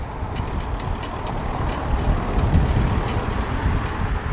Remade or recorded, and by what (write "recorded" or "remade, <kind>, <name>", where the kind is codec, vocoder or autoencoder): remade, vocoder, BigVGAN v2